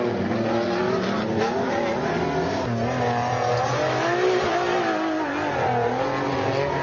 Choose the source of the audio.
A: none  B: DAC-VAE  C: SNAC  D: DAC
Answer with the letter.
A